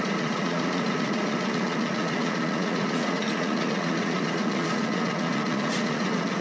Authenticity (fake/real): fake